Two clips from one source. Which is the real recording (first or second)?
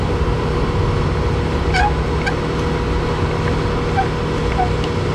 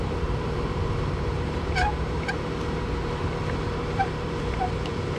first